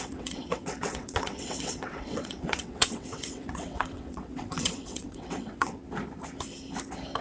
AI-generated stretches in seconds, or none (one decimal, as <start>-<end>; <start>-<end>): 0.0-5.8